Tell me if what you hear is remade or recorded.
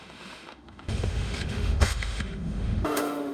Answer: remade